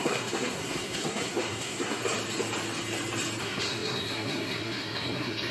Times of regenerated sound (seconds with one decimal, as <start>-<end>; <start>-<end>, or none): 0.0-2.0; 3.4-5.5